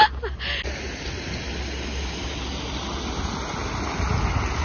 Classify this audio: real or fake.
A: real